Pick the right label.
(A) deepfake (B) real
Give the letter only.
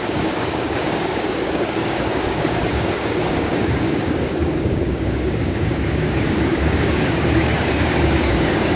A